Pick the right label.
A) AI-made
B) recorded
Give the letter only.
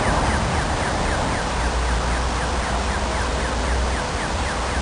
B